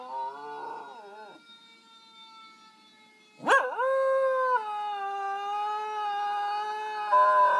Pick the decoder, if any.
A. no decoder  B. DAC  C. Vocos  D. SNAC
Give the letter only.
A